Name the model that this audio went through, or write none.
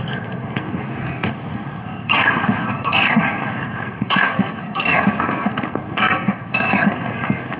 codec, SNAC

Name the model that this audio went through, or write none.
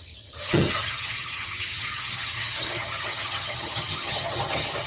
vocoder, HiFi-GAN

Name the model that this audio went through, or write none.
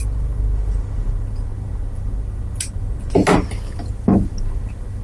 none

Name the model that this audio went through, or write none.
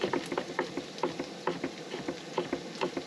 none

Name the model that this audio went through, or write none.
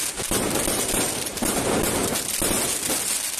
none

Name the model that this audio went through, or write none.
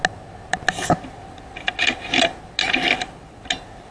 none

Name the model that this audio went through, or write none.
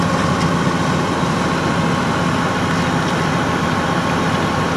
none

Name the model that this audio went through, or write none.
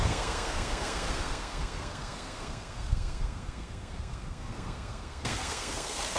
codec, SNAC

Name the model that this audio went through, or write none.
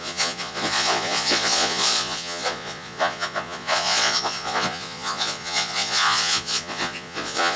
vocoder, Vocos